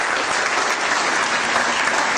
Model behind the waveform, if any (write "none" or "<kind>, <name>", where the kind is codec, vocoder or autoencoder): none